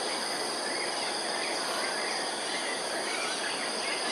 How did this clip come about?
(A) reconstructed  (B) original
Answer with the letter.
B